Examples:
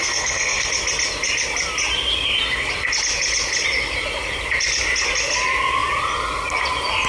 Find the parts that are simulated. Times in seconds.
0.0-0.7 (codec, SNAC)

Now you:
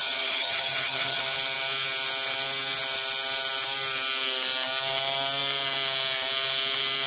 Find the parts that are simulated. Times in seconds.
0.0-1.2 (vocoder, HiFi-GAN)

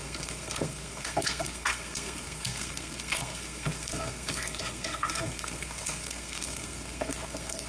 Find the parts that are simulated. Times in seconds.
0.0-7.7 (codec, SNAC)